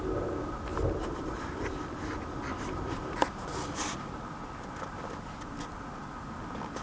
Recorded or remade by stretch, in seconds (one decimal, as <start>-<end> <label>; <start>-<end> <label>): 0.0-0.7 recorded; 0.7-3.8 remade; 3.8-6.8 recorded

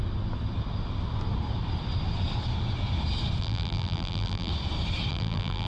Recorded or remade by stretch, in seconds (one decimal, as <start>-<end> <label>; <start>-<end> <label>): 0.0-3.4 recorded; 3.4-4.5 remade; 4.5-5.1 recorded; 5.1-5.7 remade

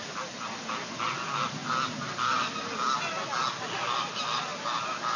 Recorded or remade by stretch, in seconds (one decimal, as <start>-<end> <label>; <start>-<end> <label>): 0.0-5.2 recorded

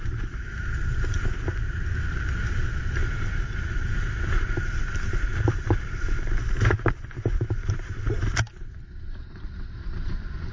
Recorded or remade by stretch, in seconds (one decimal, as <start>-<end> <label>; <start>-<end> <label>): 0.0-3.0 recorded; 3.0-6.4 remade; 6.4-7.6 recorded; 7.6-8.2 remade; 8.2-10.5 recorded

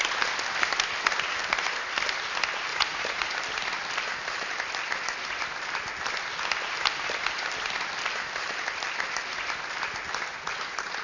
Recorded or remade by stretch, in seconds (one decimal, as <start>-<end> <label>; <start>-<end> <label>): 0.0-2.7 recorded; 2.7-3.3 remade; 3.3-11.0 recorded